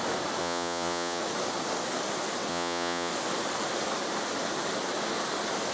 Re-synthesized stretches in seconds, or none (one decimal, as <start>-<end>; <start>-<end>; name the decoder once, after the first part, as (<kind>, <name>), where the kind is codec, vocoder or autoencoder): 0.4-1.2 (vocoder, Vocos); 2.5-3.1